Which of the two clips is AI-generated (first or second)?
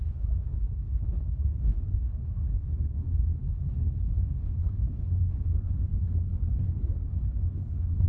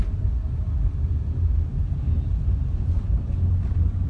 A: first